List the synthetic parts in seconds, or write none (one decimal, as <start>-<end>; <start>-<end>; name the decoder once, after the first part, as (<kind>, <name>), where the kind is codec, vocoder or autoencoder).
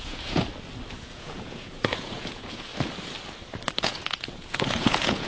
0.0-0.5 (vocoder, Vocos); 1.0-2.7; 3.8-5.3